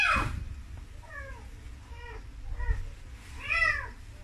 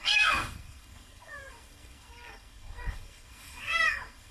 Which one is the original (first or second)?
first